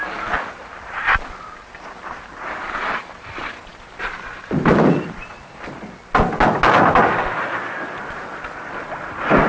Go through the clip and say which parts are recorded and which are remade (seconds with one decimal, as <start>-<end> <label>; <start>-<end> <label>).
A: 0.0-0.6 recorded; 0.6-5.7 remade; 5.7-9.5 recorded